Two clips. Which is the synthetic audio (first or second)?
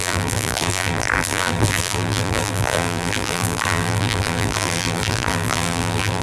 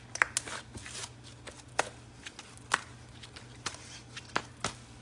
first